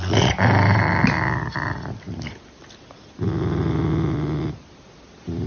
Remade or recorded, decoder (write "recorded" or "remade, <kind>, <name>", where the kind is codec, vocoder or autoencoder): recorded